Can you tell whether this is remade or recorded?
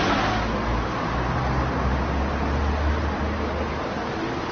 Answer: recorded